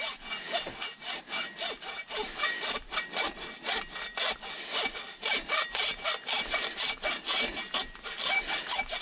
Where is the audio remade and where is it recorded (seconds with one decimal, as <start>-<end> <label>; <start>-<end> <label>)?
0.0-9.0 recorded